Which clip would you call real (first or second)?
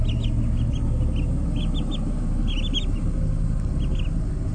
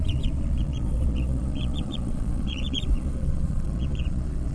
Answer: first